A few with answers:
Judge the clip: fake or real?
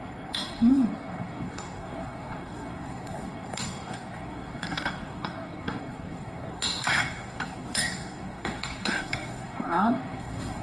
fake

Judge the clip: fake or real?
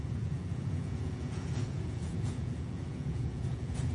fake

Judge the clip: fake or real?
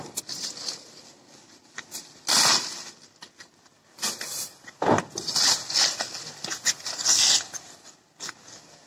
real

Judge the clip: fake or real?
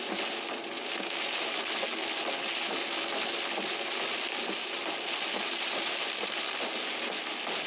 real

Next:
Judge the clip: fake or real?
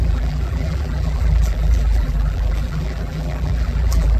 fake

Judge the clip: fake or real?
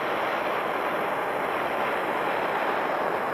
real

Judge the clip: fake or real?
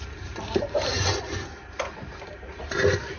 real